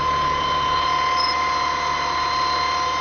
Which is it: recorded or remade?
recorded